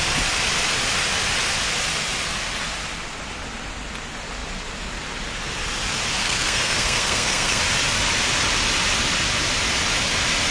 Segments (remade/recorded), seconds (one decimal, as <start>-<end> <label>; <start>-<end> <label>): 0.0-6.2 recorded; 6.2-7.6 remade; 7.6-10.5 recorded